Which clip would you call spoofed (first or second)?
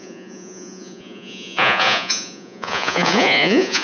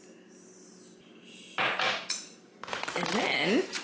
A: first